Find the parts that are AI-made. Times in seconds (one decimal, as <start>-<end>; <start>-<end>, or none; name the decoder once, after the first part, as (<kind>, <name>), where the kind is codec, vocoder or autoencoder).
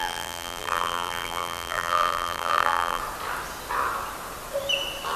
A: 0.0-3.0 (vocoder, BigVGAN v2)